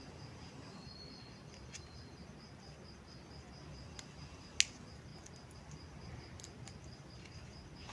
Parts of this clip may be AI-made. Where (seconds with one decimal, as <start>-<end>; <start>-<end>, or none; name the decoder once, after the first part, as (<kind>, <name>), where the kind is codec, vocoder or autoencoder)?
none